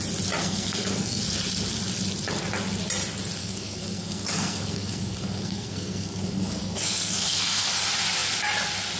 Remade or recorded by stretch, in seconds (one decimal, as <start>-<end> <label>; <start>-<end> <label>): 0.0-0.4 recorded; 0.4-1.2 remade; 1.2-3.4 recorded; 3.4-7.7 remade; 7.7-9.0 recorded